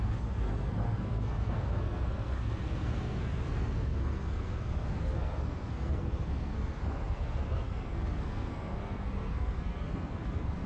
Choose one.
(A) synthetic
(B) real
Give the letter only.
A